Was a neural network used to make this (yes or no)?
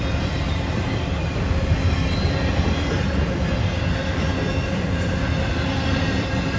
no